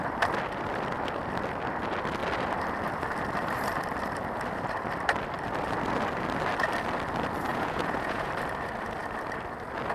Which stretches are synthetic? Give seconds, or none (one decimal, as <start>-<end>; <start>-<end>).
7.5-8.3